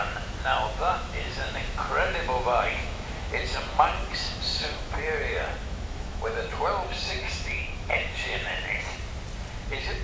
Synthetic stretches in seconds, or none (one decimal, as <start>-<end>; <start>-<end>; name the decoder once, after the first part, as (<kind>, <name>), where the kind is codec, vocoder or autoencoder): 0.8-3.3 (autoencoder, DAC-VAE); 4.0-5.0; 5.6-6.5; 7.0-8.5